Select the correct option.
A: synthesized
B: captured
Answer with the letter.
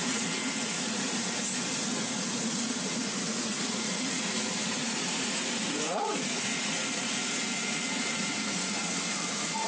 A